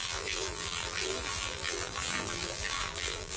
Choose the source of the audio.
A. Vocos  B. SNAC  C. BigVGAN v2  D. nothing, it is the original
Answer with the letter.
C